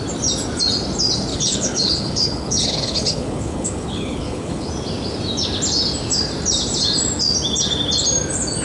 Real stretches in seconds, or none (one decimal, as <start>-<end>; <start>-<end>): 0.0-1.3; 4.7-8.6